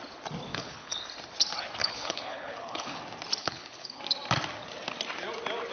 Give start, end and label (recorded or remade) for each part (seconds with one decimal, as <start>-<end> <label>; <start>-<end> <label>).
0.0-0.5 recorded; 0.5-1.0 remade; 1.0-1.8 recorded; 1.8-3.0 remade; 3.0-3.4 recorded; 3.4-4.0 remade; 4.0-5.7 recorded